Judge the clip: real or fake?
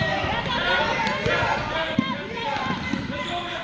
real